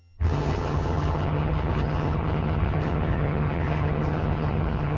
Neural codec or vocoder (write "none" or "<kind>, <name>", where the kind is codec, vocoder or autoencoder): vocoder, HiFi-GAN